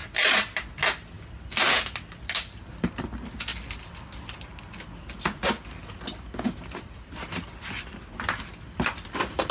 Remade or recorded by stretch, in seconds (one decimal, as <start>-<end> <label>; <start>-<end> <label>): 0.0-9.5 recorded